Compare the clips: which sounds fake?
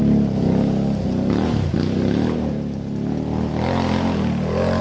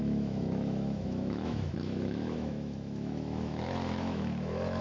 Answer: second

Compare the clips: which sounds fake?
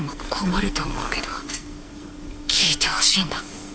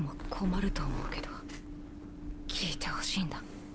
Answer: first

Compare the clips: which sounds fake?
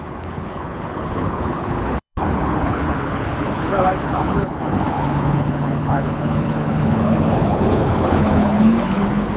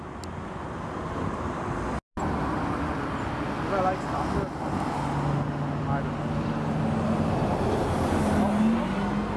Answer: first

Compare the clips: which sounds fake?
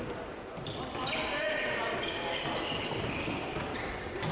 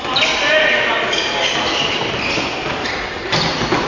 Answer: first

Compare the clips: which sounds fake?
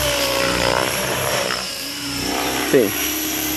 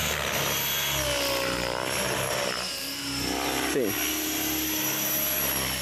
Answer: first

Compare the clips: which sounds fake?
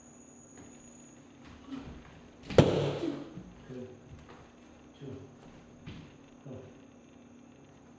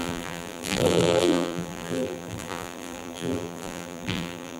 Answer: second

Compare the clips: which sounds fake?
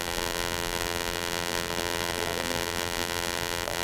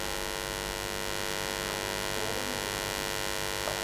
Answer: first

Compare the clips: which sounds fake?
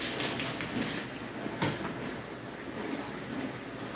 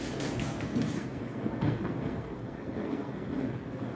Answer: second